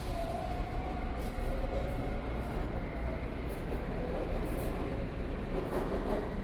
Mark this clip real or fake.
real